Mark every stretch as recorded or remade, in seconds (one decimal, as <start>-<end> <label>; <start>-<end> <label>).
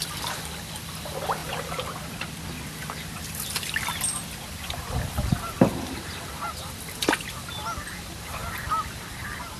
0.0-9.6 remade